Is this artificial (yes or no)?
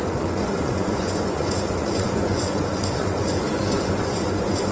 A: yes